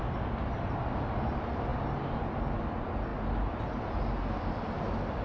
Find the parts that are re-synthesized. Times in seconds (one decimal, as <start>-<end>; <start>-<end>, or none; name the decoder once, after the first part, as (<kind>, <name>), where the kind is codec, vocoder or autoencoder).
none